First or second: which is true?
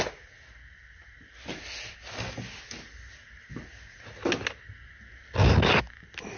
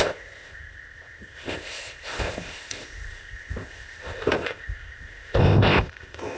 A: first